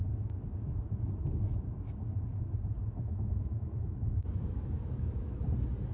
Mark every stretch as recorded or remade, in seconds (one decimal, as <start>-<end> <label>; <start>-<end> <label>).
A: 0.0-2.8 recorded; 2.8-5.4 remade; 5.4-5.9 recorded